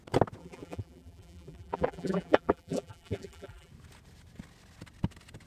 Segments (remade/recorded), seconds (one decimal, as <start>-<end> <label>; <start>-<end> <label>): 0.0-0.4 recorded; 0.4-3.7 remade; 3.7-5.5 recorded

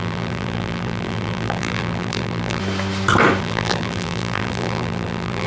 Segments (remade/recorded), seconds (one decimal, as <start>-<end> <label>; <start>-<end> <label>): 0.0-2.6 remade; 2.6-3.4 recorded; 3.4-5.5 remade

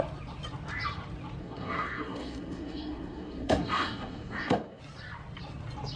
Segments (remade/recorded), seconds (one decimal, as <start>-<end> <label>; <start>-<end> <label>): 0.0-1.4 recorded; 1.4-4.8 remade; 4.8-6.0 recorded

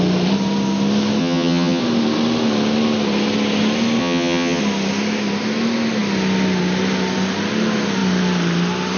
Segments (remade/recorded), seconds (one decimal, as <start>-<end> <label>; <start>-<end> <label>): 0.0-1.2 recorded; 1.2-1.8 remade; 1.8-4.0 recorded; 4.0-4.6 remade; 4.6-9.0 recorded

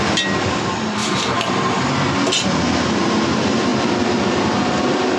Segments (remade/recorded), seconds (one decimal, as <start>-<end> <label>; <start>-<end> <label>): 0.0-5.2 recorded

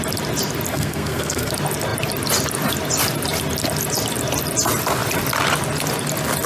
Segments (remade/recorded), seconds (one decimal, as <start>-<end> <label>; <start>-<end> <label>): 0.0-0.7 recorded; 0.7-1.5 remade; 1.5-6.5 recorded

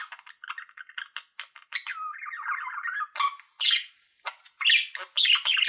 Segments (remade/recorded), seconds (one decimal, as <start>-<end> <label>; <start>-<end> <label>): 0.0-5.7 recorded